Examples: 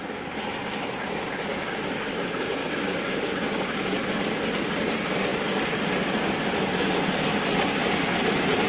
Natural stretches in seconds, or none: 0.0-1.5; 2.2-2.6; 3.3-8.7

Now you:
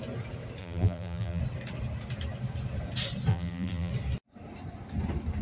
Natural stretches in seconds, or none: 0.0-0.6; 1.4-3.3; 3.9-5.4

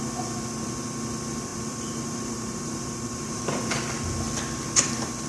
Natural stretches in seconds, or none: 0.0-1.5; 3.4-5.3

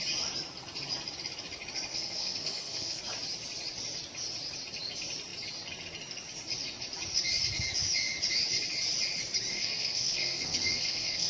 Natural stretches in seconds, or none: 0.0-1.9; 3.0-9.5

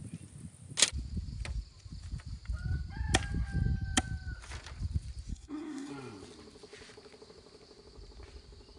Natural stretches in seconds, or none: 0.0-5.3; 5.9-8.8